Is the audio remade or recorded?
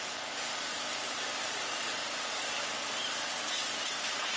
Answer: remade